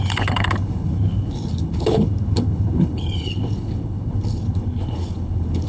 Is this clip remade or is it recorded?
remade